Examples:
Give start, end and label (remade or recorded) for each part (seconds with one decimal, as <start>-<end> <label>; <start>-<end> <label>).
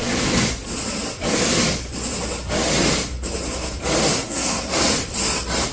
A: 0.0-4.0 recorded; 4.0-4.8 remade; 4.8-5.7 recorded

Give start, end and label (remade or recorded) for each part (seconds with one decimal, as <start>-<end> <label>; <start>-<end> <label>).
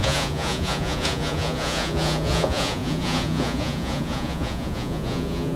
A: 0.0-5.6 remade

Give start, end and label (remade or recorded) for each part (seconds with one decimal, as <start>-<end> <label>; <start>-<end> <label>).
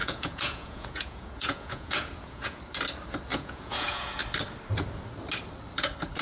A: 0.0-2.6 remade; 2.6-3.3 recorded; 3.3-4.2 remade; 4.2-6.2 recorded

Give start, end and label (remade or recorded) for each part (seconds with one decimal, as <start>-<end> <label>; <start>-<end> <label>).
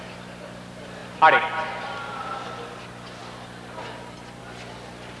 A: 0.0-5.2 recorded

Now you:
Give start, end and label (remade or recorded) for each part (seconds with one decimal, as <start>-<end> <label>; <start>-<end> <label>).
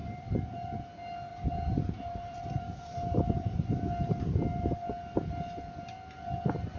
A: 0.0-0.8 remade; 0.8-1.3 recorded; 1.3-4.6 remade; 4.6-6.8 recorded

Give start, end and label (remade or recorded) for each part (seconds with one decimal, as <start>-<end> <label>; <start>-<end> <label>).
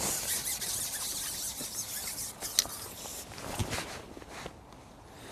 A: 0.0-5.3 recorded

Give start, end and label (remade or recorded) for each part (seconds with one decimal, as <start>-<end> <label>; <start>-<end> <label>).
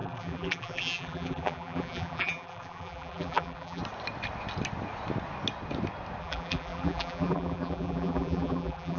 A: 0.0-3.8 remade; 3.8-6.2 recorded; 6.2-9.0 remade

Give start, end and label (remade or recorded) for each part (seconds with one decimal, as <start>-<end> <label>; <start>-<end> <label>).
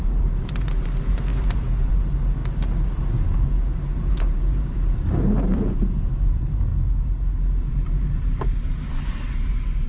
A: 0.0-2.4 remade; 2.4-4.1 recorded; 4.1-6.7 remade; 6.7-7.5 recorded; 7.5-9.9 remade